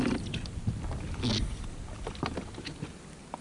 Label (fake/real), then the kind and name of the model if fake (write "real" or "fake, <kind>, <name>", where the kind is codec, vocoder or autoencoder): real